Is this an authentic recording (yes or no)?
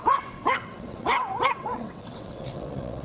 no